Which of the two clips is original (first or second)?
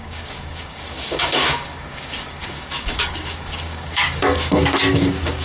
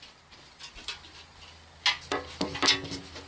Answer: second